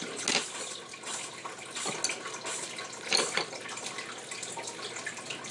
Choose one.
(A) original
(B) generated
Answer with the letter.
A